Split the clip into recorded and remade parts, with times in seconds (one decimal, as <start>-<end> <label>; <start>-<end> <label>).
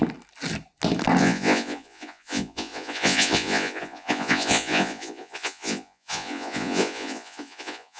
0.0-1.2 recorded; 1.2-8.0 remade